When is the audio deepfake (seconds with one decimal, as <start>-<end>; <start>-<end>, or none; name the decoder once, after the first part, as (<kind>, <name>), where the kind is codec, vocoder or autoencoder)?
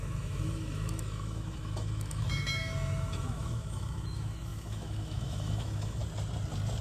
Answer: 0.0-6.0 (autoencoder, DAC-VAE)